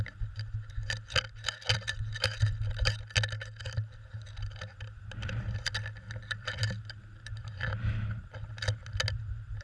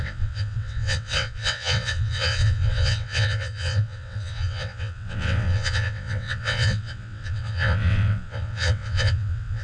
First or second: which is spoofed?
second